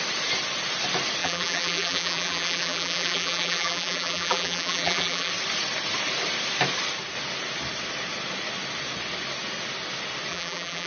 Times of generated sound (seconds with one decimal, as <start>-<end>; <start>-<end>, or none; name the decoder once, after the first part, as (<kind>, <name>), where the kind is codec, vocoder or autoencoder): 1.2-5.3 (vocoder, BigVGAN v2); 10.3-10.9